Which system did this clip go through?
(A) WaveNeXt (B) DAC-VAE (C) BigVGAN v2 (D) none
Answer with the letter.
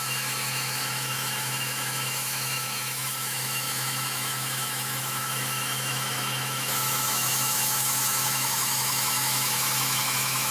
B